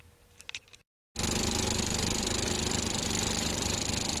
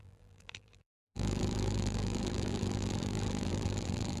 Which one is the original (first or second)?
first